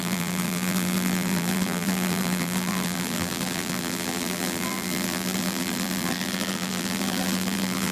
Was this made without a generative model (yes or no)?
no